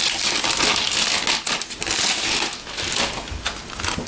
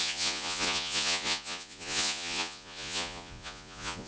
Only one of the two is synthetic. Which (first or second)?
second